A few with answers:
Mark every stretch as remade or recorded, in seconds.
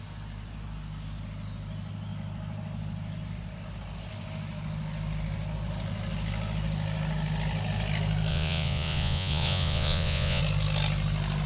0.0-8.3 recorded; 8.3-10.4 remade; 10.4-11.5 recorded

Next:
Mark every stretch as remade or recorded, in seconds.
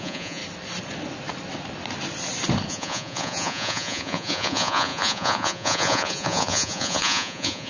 0.0-0.4 remade; 0.4-2.7 recorded; 2.7-7.7 remade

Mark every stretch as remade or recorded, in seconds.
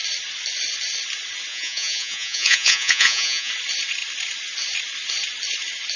0.0-1.5 recorded; 1.5-3.5 remade; 3.5-6.0 recorded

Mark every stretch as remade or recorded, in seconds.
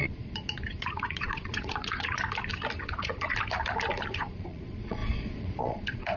0.0-2.2 remade; 2.2-2.8 recorded; 2.8-3.3 remade; 3.3-4.1 recorded; 4.1-6.2 remade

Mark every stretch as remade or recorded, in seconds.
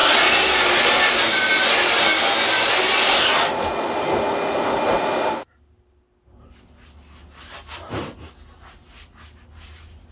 0.0-10.1 recorded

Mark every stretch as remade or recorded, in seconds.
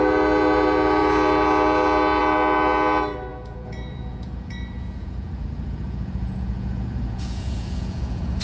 0.0-3.3 recorded; 3.3-8.4 remade